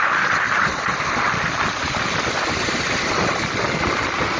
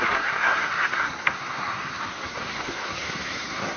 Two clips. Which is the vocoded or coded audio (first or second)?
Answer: second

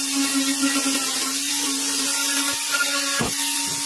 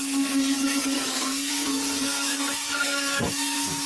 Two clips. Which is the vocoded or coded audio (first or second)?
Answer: second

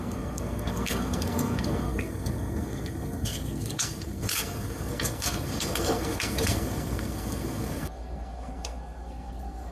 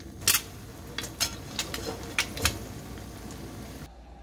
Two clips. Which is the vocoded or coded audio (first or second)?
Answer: first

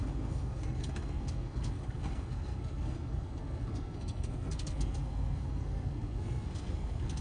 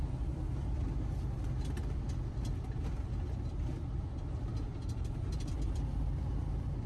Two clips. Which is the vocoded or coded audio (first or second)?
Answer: first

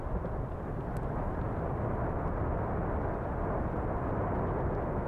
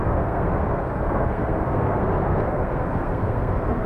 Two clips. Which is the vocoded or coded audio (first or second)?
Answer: second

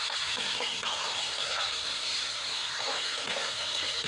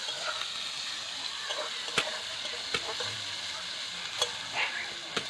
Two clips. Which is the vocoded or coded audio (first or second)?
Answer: first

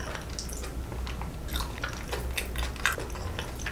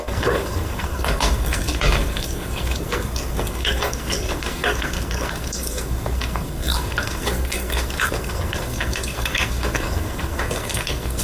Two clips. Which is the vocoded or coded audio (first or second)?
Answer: second